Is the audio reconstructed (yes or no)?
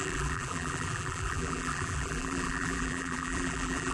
yes